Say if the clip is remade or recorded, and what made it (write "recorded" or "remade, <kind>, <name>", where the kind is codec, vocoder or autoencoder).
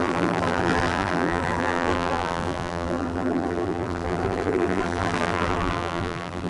remade, vocoder, BigVGAN v2